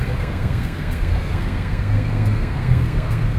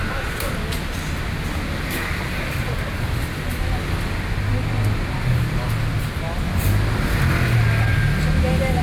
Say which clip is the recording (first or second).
second